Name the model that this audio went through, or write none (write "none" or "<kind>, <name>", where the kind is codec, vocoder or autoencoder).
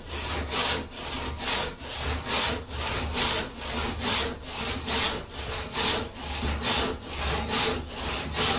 none